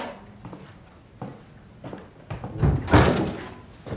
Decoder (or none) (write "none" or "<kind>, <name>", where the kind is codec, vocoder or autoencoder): none